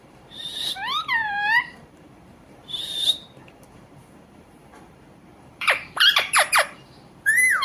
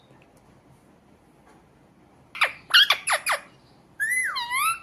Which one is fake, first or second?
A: first